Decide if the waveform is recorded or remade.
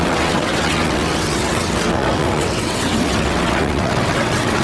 remade